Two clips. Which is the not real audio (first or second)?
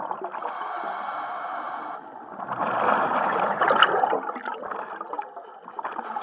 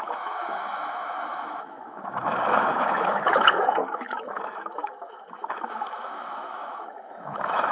second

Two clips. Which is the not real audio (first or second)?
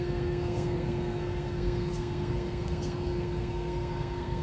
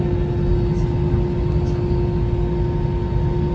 first